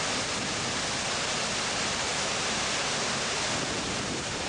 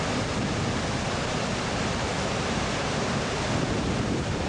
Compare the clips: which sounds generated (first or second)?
second